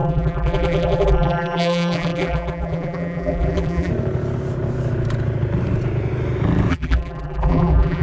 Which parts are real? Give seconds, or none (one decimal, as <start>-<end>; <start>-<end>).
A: 3.9-6.7